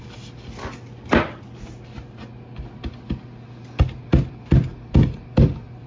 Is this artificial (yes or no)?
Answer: no